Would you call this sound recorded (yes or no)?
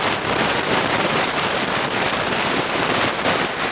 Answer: yes